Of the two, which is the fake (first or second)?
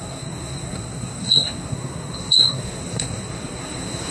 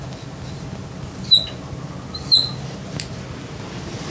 first